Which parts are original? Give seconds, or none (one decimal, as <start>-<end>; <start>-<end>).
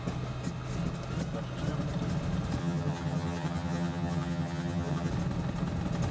0.0-2.6; 5.1-6.1